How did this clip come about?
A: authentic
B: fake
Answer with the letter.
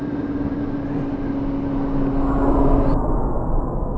A